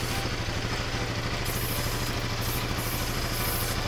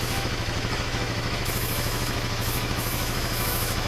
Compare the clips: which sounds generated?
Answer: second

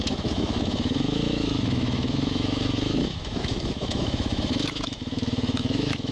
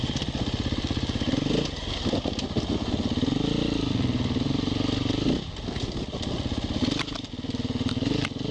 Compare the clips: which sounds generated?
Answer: first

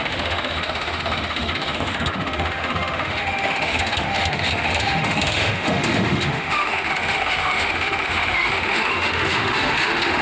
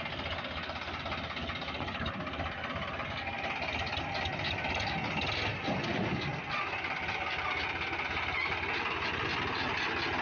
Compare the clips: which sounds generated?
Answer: first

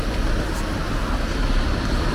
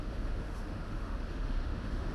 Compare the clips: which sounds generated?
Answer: second